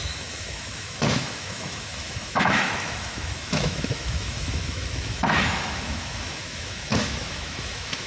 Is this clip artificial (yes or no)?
yes